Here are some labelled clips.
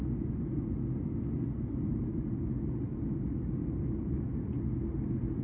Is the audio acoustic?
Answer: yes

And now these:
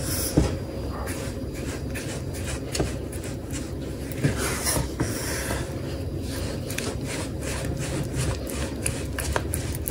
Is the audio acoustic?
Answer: yes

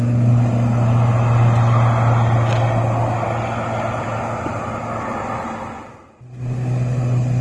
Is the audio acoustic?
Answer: yes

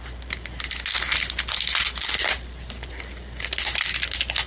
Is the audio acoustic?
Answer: yes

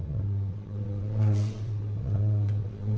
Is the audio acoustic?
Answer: no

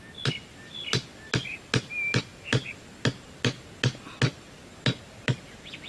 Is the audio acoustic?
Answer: yes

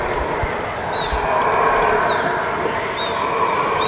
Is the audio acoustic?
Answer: yes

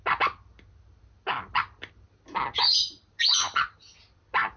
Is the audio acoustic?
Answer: yes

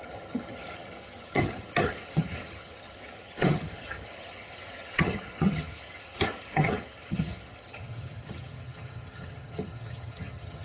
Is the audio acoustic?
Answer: no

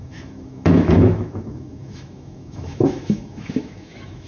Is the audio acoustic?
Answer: no